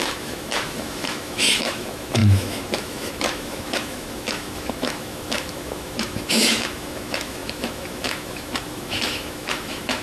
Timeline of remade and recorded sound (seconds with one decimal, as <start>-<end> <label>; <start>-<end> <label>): 0.0-10.0 remade